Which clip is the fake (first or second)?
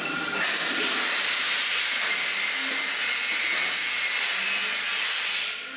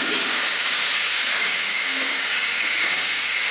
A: second